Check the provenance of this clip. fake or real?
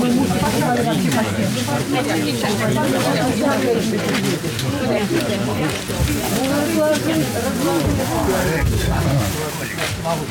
real